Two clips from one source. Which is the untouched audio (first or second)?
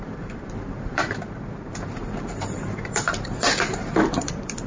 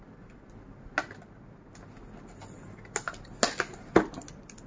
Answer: second